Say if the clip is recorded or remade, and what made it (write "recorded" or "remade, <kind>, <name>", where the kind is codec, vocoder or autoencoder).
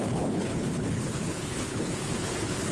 remade, codec, HILCodec